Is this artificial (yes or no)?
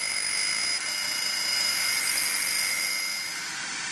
no